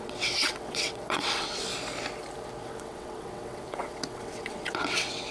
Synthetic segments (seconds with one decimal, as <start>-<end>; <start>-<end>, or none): 0.0-1.7; 2.6-5.3